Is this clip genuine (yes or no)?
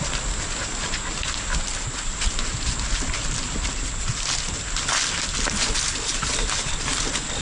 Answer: yes